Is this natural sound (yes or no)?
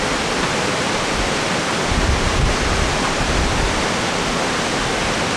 yes